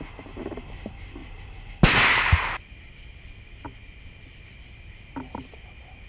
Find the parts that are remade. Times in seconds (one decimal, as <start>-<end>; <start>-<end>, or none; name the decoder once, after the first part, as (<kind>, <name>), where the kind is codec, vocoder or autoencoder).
none